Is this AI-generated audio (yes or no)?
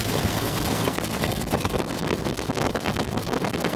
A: yes